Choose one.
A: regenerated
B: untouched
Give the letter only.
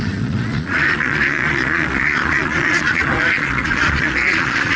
A